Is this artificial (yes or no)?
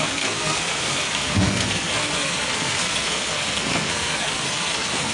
yes